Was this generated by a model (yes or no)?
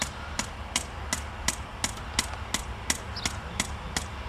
no